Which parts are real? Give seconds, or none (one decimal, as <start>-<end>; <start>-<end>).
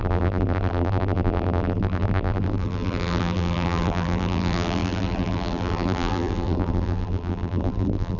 none